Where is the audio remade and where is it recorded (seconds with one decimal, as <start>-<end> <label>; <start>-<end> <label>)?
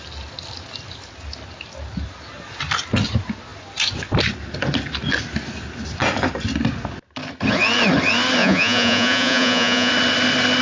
0.0-8.4 recorded; 8.4-9.9 remade; 9.9-10.6 recorded